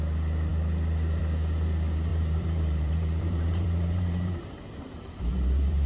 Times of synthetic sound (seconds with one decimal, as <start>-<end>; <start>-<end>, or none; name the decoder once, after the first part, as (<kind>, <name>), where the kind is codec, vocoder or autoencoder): 2.1-5.9 (vocoder, BigVGAN v2)